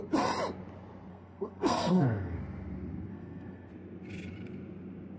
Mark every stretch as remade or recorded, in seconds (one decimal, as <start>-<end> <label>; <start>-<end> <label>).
0.0-1.1 recorded; 1.1-2.4 remade; 2.4-3.1 recorded; 3.1-3.7 remade; 3.7-5.2 recorded